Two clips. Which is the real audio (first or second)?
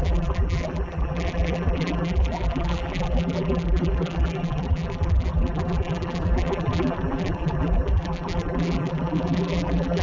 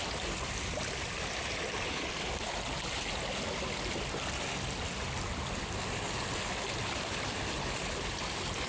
second